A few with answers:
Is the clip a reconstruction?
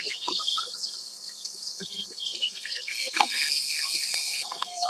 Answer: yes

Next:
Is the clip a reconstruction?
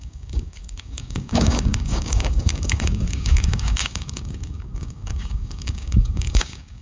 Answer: yes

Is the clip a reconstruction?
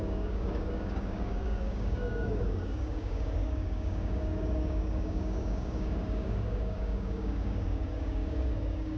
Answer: yes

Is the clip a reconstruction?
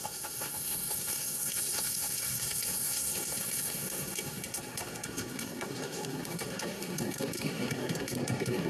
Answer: yes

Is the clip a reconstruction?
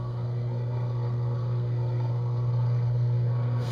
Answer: yes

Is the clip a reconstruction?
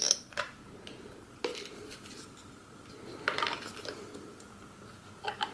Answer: no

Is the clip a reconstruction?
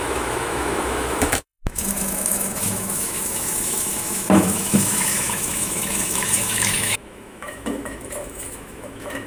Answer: yes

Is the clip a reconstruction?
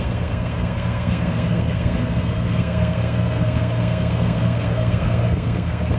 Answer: yes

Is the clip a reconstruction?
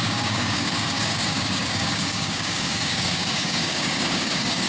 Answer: yes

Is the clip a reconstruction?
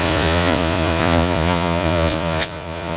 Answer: yes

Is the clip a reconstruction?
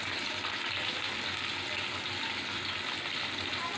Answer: no